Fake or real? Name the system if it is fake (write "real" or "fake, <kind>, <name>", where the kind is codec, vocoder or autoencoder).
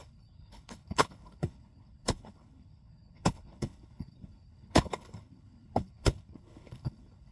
fake, codec, HILCodec